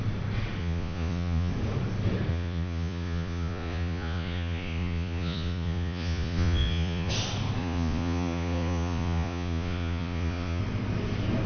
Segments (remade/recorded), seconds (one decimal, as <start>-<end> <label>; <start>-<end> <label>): 0.0-0.6 recorded; 0.6-1.5 remade; 1.5-2.3 recorded; 2.3-7.1 remade; 7.1-7.6 recorded; 7.6-10.6 remade; 10.6-11.5 recorded